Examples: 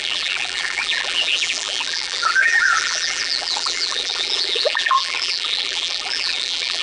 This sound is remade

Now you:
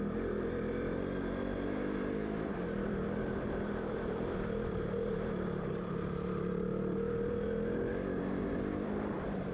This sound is remade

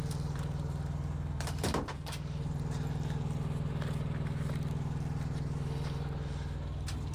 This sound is remade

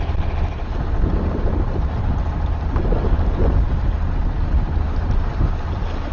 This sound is recorded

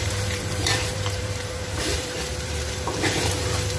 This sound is remade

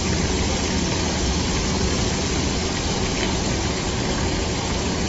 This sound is recorded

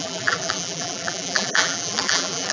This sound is remade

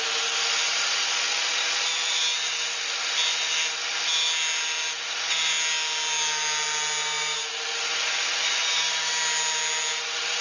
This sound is recorded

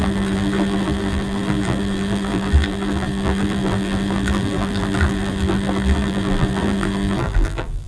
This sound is remade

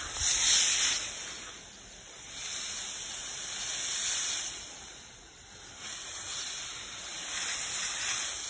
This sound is remade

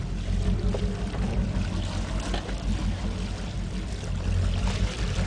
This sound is recorded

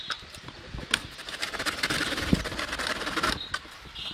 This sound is recorded